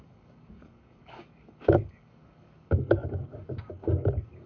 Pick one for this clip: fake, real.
fake